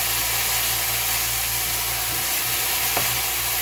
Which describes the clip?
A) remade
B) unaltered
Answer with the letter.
B